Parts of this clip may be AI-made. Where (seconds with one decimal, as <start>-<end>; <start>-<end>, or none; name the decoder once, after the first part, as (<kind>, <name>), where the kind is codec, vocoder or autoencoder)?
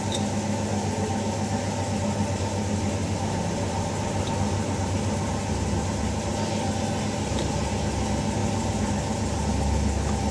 none